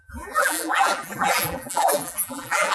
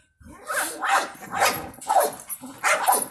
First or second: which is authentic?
second